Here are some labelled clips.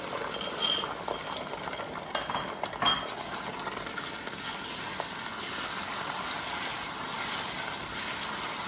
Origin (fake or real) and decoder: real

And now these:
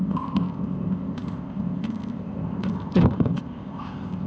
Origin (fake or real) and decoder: fake, codec, ZipCodec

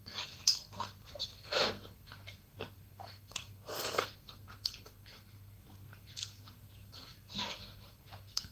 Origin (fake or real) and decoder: fake, codec, SNAC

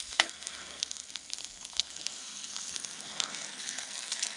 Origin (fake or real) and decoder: fake, codec, SNAC